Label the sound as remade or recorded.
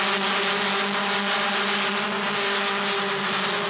recorded